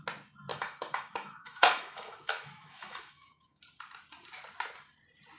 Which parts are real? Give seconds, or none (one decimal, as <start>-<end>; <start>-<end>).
0.0-0.5; 3.6-5.4

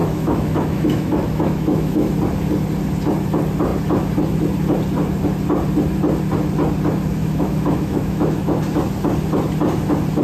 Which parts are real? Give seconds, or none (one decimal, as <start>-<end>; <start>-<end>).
2.1-7.2; 8.6-10.2

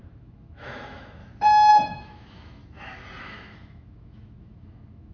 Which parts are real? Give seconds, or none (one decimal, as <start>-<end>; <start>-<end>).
1.2-1.7; 2.6-3.2

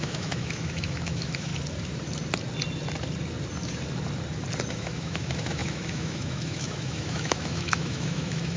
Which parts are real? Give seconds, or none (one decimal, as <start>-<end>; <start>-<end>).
1.5-4.7

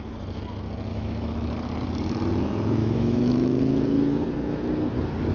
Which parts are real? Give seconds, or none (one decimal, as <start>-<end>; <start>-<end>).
0.0-0.9; 1.5-2.8; 3.6-5.3